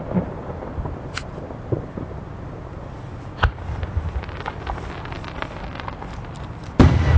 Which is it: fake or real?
real